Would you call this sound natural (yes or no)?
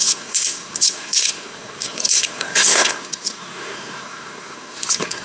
no